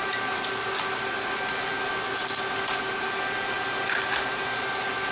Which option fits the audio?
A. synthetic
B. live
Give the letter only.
B